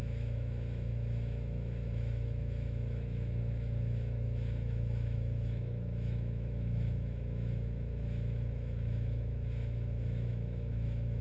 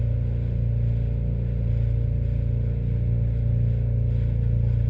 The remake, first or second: first